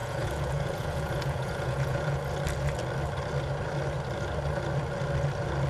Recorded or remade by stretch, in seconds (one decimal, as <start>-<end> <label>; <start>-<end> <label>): 0.0-2.2 remade; 2.2-5.7 recorded